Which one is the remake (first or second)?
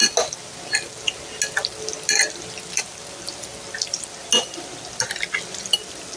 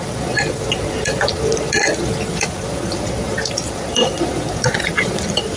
second